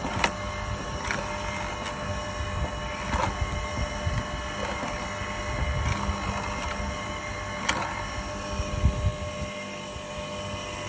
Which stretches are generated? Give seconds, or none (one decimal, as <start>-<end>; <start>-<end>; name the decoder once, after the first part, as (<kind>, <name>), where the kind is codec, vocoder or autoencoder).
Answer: none